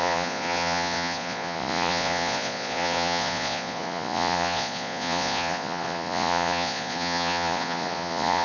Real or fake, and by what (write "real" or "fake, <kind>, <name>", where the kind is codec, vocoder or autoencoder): fake, vocoder, Vocos